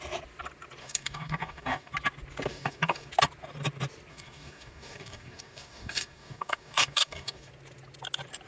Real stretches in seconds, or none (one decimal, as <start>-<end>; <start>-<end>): 0.0-0.8; 1.9-2.5; 3.1-4.1; 7.5-8.5